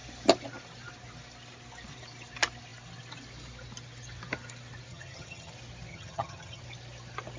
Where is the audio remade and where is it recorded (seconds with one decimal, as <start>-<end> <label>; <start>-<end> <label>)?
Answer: 0.0-4.9 recorded; 4.9-5.5 remade; 5.5-5.9 recorded; 5.9-6.6 remade; 6.6-7.4 recorded